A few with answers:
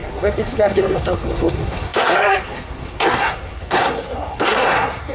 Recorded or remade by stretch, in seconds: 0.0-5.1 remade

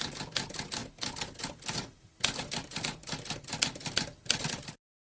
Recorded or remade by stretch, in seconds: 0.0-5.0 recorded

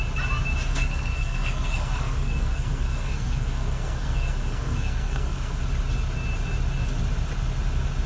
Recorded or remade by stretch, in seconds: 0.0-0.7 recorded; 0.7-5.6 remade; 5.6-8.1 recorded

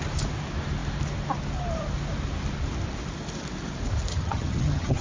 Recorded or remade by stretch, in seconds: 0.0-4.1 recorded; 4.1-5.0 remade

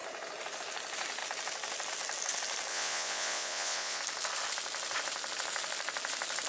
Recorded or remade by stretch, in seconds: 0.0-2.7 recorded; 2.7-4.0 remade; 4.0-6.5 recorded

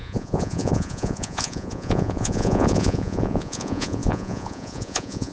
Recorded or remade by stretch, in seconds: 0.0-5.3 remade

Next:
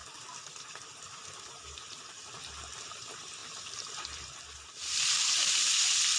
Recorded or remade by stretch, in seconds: 0.0-2.8 recorded; 2.8-6.2 remade